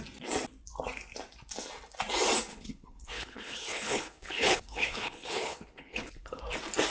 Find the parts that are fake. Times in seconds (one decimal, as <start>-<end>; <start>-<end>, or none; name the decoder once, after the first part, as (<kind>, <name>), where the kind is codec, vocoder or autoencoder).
2.5-6.4 (codec, HILCodec)